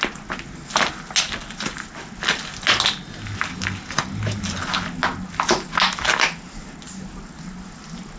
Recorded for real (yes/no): yes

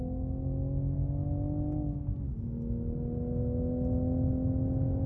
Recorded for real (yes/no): yes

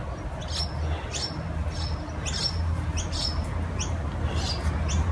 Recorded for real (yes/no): yes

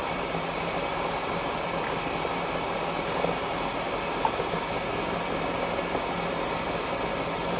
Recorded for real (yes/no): yes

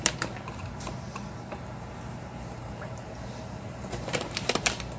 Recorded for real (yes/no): no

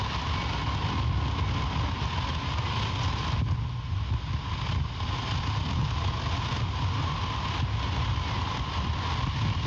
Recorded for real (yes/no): yes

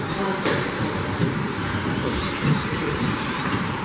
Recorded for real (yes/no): no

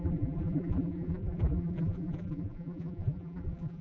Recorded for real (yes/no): no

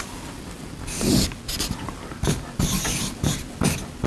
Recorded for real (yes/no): yes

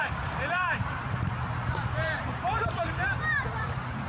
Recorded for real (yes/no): no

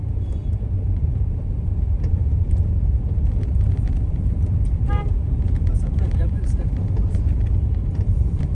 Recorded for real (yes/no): no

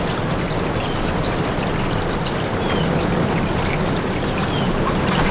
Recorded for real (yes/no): yes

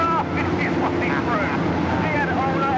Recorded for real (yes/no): yes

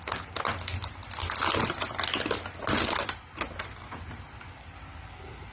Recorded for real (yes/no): yes